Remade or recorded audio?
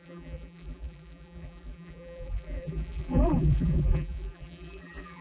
remade